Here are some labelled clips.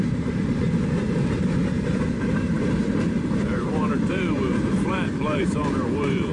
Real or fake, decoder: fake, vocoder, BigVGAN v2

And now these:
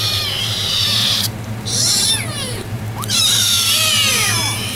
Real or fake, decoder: fake, vocoder, BigVGAN v2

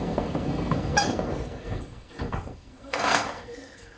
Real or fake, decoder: fake, codec, SNAC